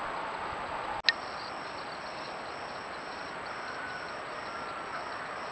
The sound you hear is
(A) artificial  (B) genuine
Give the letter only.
B